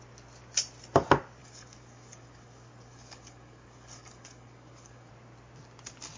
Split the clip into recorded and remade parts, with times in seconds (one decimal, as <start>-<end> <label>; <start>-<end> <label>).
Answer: 0.0-1.4 recorded; 1.4-5.1 remade; 5.1-6.2 recorded